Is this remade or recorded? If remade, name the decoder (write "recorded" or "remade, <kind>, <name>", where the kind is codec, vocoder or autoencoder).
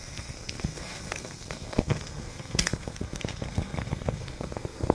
remade, codec, SNAC